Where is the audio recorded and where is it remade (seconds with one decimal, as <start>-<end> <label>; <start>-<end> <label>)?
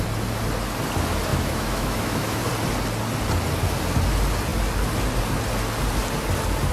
0.0-1.3 recorded; 1.3-2.4 remade; 2.4-6.7 recorded